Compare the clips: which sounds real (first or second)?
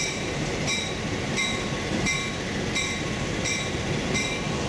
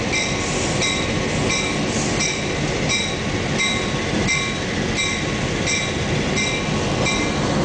second